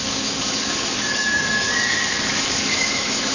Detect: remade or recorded remade